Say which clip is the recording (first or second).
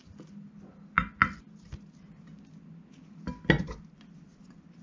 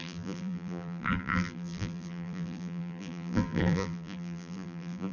first